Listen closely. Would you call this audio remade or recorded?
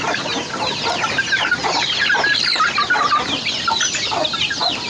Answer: recorded